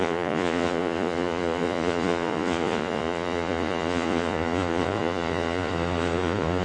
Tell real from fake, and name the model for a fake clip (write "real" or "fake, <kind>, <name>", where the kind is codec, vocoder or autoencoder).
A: fake, vocoder, Vocos